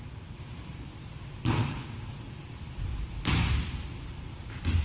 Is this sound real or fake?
fake